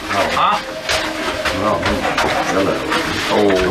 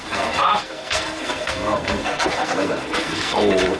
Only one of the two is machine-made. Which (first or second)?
second